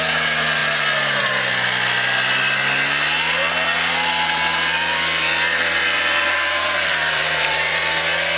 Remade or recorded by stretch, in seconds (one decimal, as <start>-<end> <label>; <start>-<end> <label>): 0.0-5.8 recorded; 5.8-7.8 remade; 7.8-8.4 recorded